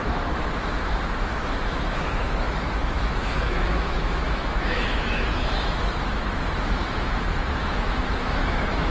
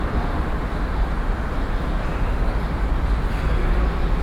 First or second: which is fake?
first